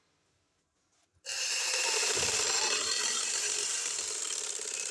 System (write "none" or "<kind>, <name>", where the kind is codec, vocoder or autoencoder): none